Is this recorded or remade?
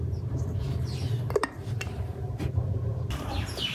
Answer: remade